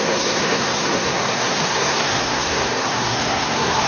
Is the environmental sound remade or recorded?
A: remade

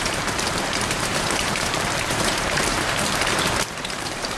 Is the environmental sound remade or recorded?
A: remade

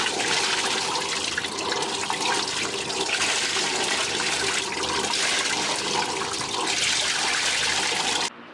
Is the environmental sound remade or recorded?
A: recorded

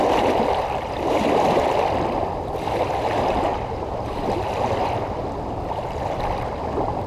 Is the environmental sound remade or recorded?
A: remade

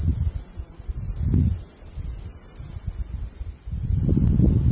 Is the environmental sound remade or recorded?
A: recorded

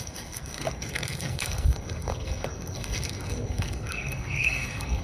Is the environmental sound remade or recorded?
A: remade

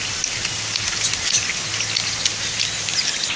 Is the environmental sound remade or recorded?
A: recorded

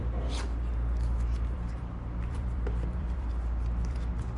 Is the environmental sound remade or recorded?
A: remade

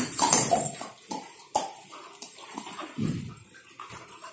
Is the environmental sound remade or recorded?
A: remade